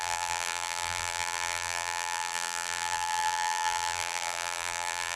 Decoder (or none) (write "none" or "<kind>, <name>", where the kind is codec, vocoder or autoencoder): vocoder, BigVGAN v2